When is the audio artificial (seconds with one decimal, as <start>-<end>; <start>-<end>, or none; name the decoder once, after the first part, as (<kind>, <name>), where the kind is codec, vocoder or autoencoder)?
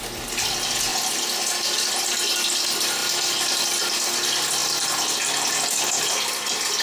0.9-1.9 (vocoder, BigVGAN v2); 3.0-3.6; 4.6-5.5